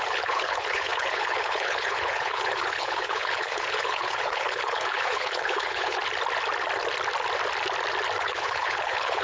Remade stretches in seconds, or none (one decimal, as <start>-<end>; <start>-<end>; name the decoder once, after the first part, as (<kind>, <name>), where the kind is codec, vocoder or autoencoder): 0.0-6.0 (codec, HILCodec); 8.2-9.2